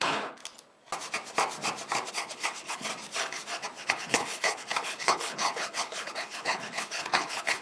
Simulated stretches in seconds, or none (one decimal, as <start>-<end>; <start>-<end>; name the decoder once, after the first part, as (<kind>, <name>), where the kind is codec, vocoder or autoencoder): 0.0-0.4 (codec, HILCodec); 2.1-2.9; 3.9-7.6